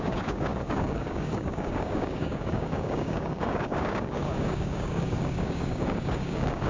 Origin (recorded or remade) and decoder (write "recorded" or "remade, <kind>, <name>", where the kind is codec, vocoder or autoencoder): remade, codec, DAC